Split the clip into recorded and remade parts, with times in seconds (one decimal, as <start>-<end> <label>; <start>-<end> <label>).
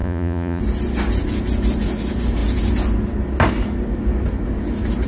0.0-0.6 remade; 0.6-5.1 recorded